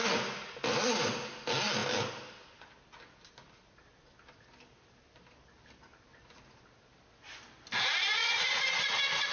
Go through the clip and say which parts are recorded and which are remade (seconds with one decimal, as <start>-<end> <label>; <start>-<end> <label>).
0.0-8.2 recorded; 8.2-8.9 remade; 8.9-9.3 recorded